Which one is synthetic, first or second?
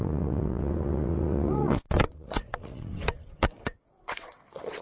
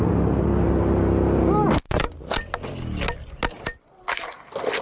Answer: first